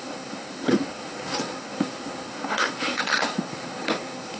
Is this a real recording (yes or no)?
no